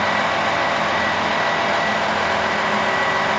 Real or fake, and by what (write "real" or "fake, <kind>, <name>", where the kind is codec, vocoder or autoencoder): real